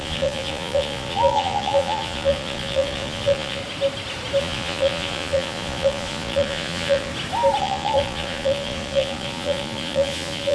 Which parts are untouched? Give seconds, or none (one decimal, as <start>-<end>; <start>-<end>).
3.6-4.4; 7.1-7.6